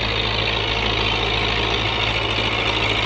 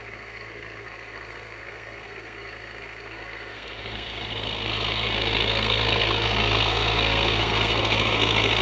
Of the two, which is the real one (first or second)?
first